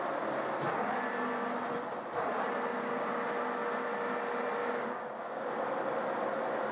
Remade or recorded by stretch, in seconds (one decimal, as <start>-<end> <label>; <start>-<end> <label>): 0.0-2.7 recorded; 2.7-3.2 remade; 3.2-4.6 recorded; 4.6-5.5 remade; 5.5-6.7 recorded